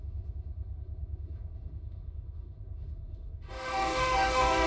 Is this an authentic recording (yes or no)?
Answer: no